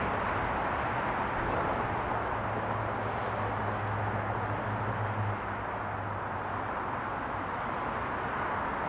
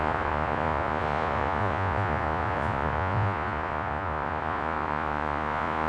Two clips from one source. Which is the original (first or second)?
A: first